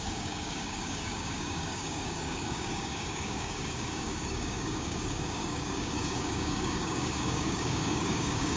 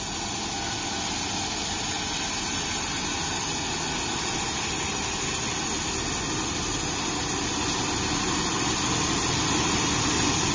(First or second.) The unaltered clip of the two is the second